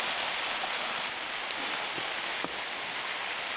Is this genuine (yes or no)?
yes